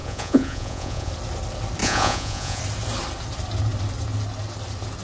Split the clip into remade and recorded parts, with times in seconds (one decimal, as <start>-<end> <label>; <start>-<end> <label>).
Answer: 0.0-1.1 remade; 1.1-1.8 recorded; 1.8-2.6 remade; 2.6-5.0 recorded